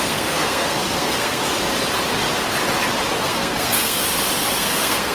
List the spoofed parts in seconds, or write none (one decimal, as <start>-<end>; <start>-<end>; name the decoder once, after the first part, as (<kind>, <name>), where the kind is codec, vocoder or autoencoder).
0.0-1.4 (codec, SNAC); 3.2-4.0; 4.6-5.1